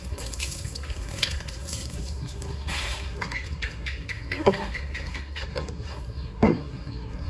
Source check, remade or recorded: remade